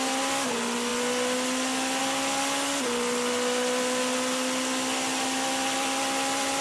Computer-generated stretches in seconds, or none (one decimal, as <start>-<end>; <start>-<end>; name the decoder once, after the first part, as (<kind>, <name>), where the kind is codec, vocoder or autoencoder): none